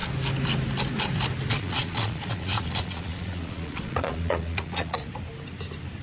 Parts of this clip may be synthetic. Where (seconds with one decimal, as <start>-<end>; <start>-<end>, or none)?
1.5-5.1